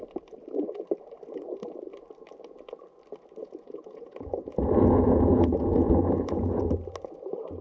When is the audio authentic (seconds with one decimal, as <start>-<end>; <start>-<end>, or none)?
0.0-3.4; 6.6-7.6